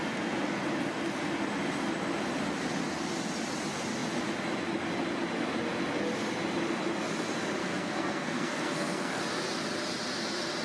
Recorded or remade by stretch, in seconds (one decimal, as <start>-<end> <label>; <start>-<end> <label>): 0.0-7.6 recorded; 7.6-9.2 remade; 9.2-10.6 recorded